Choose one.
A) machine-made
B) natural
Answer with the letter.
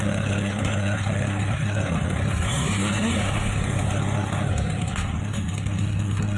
A